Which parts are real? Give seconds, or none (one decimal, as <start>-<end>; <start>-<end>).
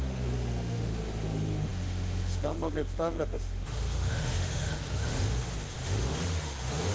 none